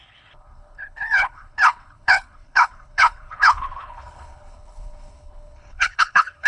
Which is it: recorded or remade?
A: remade